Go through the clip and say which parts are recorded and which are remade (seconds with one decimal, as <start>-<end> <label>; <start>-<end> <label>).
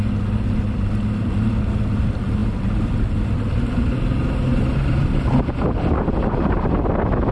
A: 0.0-7.3 recorded